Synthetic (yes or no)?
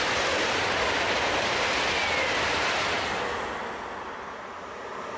no